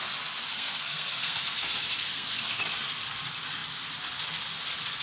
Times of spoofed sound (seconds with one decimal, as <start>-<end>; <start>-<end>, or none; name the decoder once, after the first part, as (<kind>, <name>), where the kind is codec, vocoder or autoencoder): 0.5-2.6 (codec, SNAC)